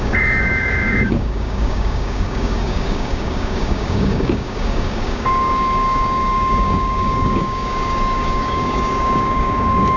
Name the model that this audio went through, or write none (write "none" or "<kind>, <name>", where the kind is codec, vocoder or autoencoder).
codec, DAC